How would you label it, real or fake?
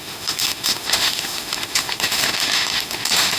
fake